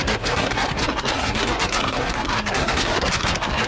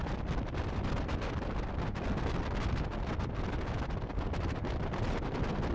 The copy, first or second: first